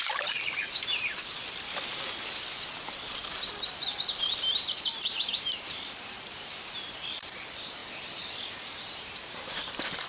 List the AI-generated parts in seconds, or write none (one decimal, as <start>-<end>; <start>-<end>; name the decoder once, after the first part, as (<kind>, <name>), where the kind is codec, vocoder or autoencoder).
0.0-1.4 (vocoder, BigVGAN v2); 4.2-7.8; 8.6-10.1